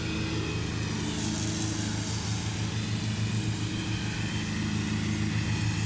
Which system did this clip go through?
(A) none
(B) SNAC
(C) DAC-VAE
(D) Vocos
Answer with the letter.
A